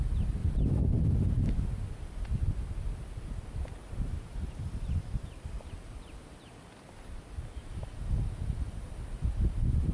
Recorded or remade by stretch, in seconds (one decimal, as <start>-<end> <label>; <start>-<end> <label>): 0.0-4.1 recorded; 4.1-5.6 remade; 5.6-9.9 recorded